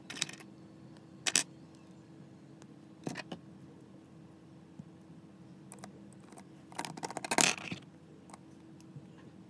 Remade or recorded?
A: recorded